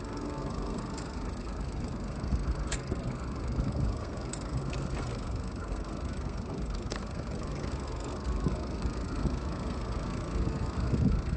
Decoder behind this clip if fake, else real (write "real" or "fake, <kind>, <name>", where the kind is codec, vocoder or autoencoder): fake, codec, SNAC